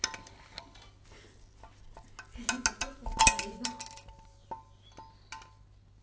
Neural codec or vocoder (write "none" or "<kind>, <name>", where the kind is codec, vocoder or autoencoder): none